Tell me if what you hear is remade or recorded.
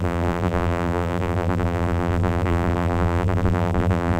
remade